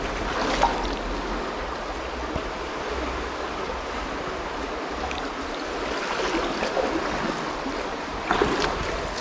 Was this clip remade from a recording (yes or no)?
no